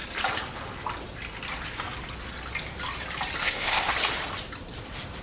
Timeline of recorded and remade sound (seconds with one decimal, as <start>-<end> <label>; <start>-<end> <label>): 0.0-3.4 recorded; 3.4-3.9 remade; 3.9-5.2 recorded